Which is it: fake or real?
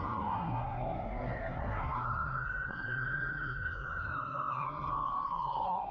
fake